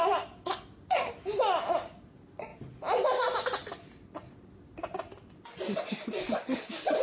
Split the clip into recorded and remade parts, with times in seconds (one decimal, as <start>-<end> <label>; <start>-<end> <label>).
0.0-7.0 recorded